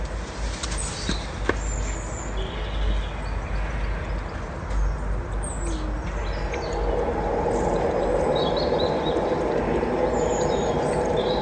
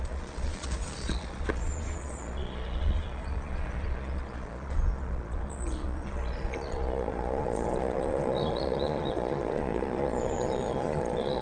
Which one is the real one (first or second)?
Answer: first